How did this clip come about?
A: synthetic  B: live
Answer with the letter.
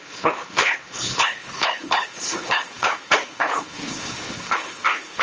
A